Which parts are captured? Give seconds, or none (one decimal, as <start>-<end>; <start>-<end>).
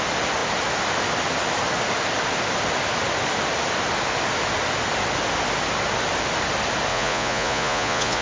0.0-6.9